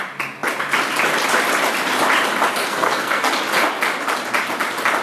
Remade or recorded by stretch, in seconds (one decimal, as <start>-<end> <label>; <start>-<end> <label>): 0.0-2.6 recorded; 2.6-3.3 remade; 3.3-5.0 recorded